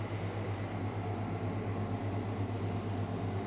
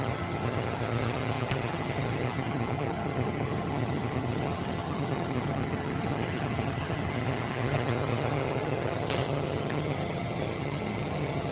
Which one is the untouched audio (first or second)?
first